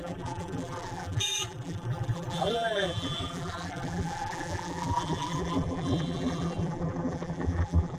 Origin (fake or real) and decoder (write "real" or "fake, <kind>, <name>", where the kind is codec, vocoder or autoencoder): fake, vocoder, BigVGAN v2